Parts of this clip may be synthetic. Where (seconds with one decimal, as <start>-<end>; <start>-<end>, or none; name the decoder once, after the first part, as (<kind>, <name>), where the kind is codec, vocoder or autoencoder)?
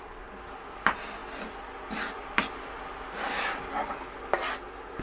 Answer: none